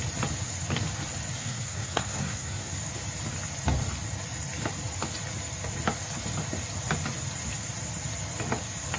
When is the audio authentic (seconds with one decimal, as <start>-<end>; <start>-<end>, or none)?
0.0-1.4; 2.7-9.0